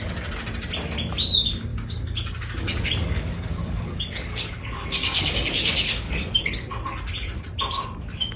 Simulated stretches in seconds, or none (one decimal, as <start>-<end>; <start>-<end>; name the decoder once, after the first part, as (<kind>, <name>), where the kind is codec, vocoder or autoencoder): 1.7-6.4 (codec, DAC)